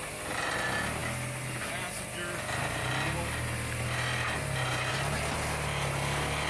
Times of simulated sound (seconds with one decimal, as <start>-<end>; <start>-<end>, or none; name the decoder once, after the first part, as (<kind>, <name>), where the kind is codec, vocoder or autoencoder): none

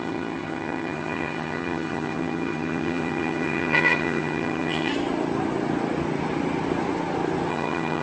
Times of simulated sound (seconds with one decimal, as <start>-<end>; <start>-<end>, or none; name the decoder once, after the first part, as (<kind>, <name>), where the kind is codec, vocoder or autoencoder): 0.0-4.9 (vocoder, HiFi-GAN); 7.5-8.0

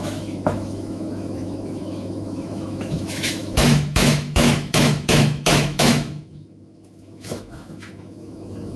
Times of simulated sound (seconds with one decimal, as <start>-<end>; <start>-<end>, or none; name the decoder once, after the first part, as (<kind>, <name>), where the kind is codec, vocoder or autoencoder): 0.0-8.8 (autoencoder, DAC-VAE)

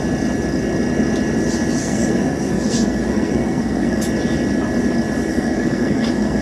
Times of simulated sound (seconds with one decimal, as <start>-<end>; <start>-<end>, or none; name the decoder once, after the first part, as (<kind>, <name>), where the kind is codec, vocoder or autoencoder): 1.8-4.0 (codec, SNAC); 5.3-6.4

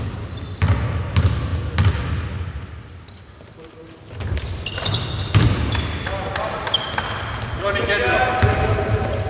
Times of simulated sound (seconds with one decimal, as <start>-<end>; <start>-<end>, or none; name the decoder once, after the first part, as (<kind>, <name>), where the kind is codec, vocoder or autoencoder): none